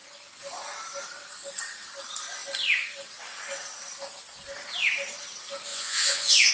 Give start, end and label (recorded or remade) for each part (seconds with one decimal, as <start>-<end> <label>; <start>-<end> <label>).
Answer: 0.0-5.7 recorded; 5.7-6.5 remade